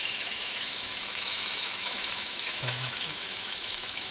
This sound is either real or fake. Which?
fake